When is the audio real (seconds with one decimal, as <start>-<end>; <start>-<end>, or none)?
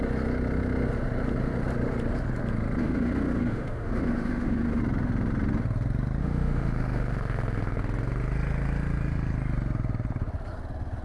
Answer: 0.0-2.8; 4.8-6.2; 7.8-11.0